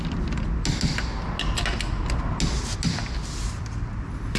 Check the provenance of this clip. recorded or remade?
recorded